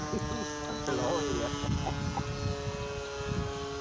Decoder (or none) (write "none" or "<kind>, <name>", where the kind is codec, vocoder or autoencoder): none